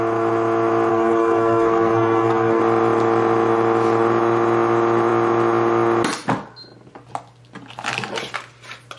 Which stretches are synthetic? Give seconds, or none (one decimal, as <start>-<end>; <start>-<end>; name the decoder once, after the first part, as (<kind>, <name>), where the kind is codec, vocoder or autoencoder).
0.9-2.6 (codec, SNAC)